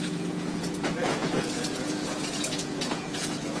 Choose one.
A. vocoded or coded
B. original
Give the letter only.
A